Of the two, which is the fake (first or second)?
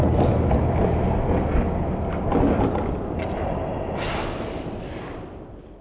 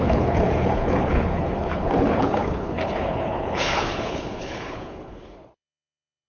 second